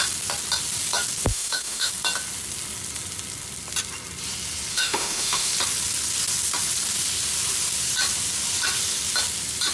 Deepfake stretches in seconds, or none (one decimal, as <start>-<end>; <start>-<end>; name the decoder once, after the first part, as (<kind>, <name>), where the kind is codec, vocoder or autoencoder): 1.3-1.9 (autoencoder, DAC-VAE); 4.7-5.5